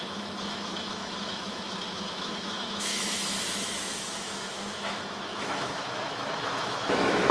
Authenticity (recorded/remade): remade